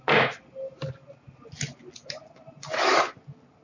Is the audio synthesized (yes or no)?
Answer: no